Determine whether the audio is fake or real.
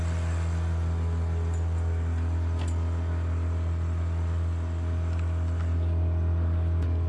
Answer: real